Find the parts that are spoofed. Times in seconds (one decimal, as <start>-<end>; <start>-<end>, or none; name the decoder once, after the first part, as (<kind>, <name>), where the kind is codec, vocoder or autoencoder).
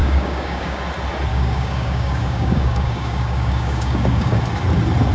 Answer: 0.0-0.8 (codec, DAC); 1.3-4.4